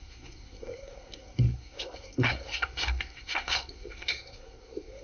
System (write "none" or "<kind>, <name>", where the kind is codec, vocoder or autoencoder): codec, SNAC